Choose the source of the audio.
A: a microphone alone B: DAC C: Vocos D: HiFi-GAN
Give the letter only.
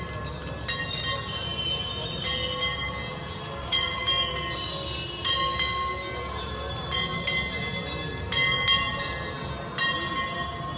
A